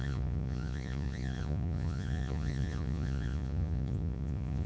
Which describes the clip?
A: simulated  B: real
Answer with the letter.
A